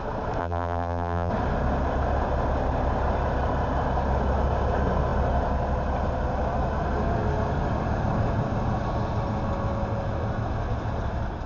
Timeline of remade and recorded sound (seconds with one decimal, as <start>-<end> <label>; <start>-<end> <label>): 0.0-0.4 recorded; 0.4-1.3 remade; 1.3-11.5 recorded